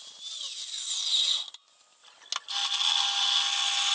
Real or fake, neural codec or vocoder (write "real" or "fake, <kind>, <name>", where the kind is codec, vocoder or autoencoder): real